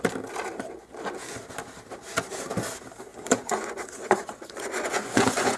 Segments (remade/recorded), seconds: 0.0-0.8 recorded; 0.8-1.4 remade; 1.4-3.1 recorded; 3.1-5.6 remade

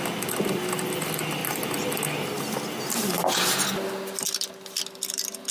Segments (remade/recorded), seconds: 0.0-5.5 recorded

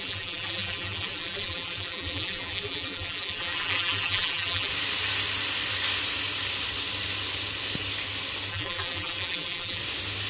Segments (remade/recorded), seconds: 0.0-4.7 remade; 4.7-8.5 recorded; 8.5-9.8 remade; 9.8-10.3 recorded

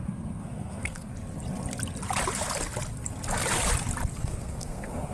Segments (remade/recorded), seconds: 0.0-1.1 remade; 1.1-4.2 recorded; 4.2-5.1 remade

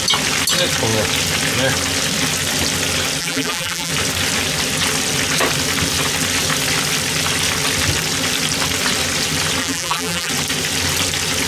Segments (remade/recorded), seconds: 0.0-3.2 recorded; 3.2-3.9 remade; 3.9-9.6 recorded; 9.6-10.3 remade; 10.3-11.5 recorded

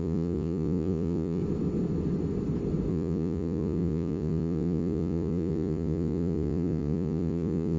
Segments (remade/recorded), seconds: 0.0-1.4 remade; 1.4-2.9 recorded; 2.9-7.8 remade

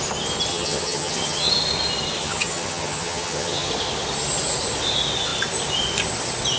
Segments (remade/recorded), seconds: 0.0-0.5 recorded; 0.5-1.5 remade; 1.5-2.2 recorded; 2.2-3.7 remade; 3.7-6.6 recorded